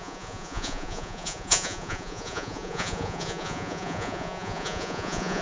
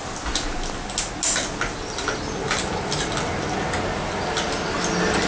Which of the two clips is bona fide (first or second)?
second